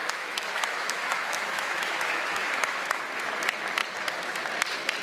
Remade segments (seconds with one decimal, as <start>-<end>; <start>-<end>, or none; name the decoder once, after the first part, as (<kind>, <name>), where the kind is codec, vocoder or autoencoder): 0.0-3.0 (autoencoder, DAC-VAE)